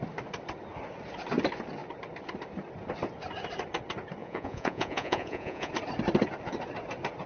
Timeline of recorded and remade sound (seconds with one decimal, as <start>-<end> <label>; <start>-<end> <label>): 0.0-4.2 recorded; 4.2-5.7 remade; 5.7-7.3 recorded